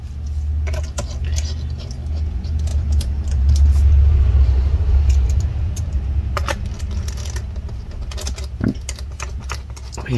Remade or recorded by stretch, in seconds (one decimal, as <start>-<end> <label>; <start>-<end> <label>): 0.0-2.7 recorded; 2.7-5.5 remade; 5.5-10.2 recorded